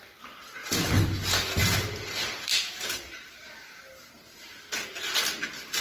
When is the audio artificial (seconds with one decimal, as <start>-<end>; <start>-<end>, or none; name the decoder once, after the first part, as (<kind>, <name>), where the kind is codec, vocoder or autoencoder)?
0.6-4.1 (vocoder, BigVGAN v2)